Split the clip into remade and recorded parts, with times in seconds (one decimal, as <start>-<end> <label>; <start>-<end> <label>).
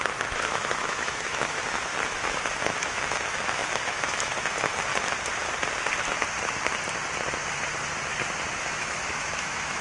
0.0-4.9 remade; 4.9-8.6 recorded; 8.6-9.8 remade